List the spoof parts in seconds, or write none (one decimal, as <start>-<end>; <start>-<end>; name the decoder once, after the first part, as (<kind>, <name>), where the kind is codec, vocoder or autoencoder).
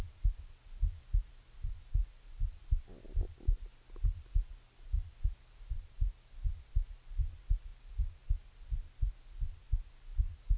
none